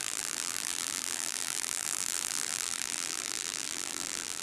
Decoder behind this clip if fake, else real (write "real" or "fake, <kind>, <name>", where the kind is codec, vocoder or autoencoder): fake, vocoder, BigVGAN v2